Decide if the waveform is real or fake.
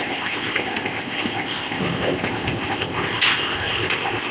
fake